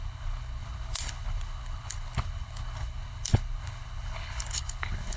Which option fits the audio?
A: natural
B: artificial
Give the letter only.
B